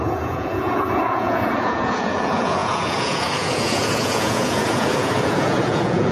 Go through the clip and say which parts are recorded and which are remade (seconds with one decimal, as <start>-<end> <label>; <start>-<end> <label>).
0.0-6.1 remade